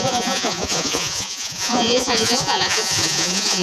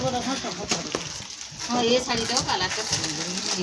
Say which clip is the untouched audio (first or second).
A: second